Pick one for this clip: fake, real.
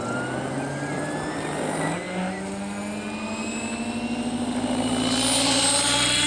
real